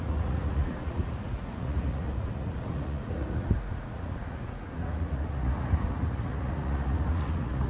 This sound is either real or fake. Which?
fake